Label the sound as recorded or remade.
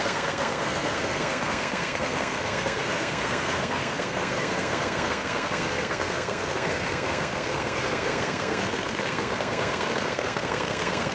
remade